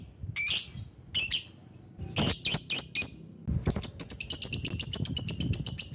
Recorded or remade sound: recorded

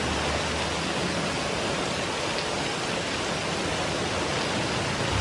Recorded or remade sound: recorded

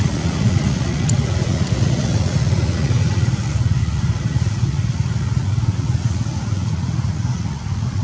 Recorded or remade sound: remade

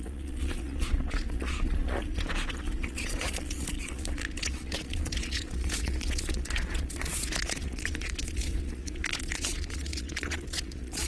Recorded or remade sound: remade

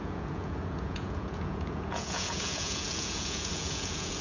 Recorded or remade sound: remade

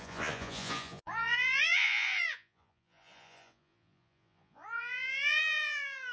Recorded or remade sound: remade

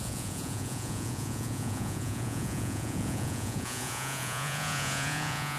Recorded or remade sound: remade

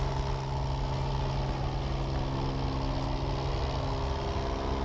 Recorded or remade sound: recorded